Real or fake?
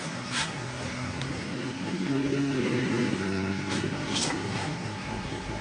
fake